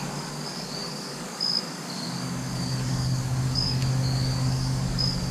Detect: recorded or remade remade